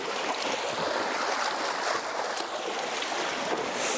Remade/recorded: recorded